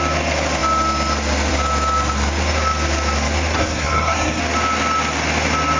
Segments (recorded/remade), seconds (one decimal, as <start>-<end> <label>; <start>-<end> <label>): 0.0-3.6 recorded; 3.6-4.4 remade; 4.4-5.8 recorded